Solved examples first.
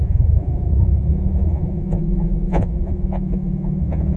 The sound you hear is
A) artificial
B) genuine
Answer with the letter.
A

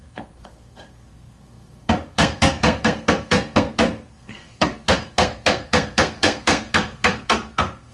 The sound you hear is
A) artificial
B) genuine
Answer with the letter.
A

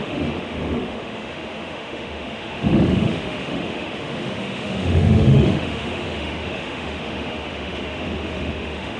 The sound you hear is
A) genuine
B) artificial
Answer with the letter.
B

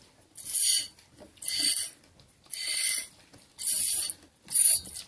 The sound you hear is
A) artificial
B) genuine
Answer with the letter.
B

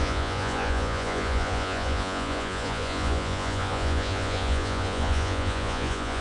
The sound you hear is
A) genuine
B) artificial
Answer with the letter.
B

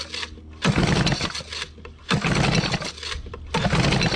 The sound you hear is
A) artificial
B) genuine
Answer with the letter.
B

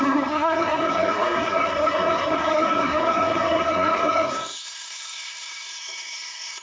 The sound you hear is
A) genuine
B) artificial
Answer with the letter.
B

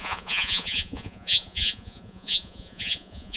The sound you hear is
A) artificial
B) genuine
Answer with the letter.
A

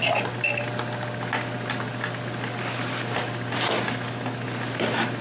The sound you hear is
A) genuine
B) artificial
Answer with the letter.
A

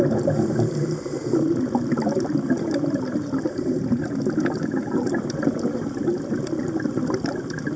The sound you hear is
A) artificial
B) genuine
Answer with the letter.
B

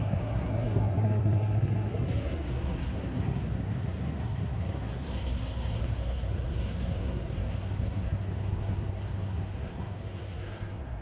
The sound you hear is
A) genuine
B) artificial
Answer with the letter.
B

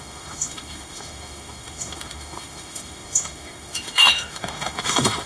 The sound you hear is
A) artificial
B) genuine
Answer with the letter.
A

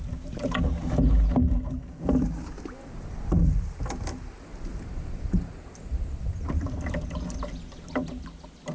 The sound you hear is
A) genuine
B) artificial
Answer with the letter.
A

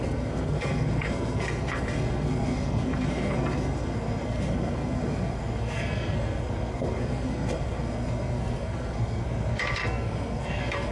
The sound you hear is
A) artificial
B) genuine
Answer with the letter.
A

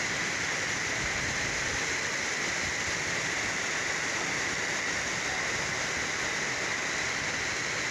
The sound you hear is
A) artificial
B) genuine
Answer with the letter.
B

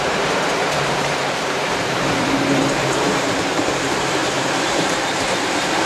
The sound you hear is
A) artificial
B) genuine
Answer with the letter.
A